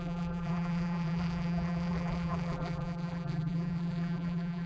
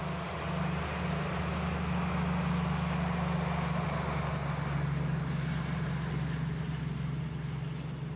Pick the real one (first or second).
second